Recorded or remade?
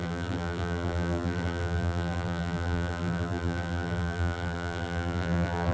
remade